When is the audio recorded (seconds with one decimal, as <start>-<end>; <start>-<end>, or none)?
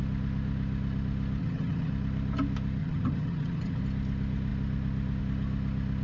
0.0-1.4; 1.9-2.8; 3.8-6.0